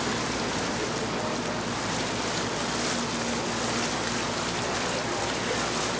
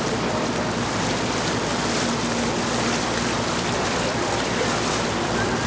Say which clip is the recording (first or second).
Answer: first